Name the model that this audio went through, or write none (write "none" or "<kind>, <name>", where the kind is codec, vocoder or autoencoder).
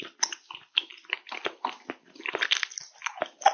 none